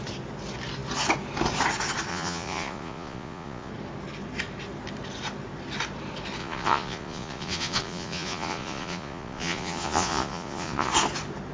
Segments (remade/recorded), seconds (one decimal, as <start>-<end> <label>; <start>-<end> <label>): 0.0-2.1 recorded; 2.1-3.7 remade; 3.7-6.4 recorded; 6.4-10.9 remade; 10.9-11.5 recorded